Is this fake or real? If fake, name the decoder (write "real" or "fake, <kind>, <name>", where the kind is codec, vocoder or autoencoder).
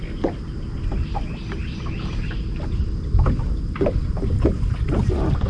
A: real